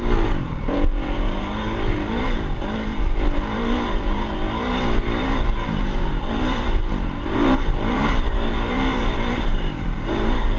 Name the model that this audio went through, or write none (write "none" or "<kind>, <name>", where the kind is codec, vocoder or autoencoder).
vocoder, BigVGAN v2